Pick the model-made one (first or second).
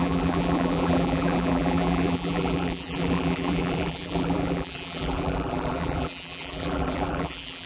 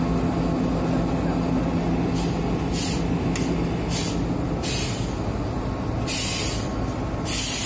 first